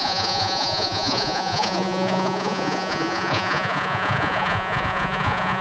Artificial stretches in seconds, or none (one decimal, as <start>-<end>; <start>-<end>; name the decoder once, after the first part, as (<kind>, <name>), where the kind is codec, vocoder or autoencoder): 0.0-5.6 (vocoder, Vocos)